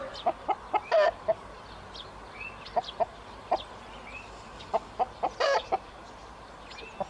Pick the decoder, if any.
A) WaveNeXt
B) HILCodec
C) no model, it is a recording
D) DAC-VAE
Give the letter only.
C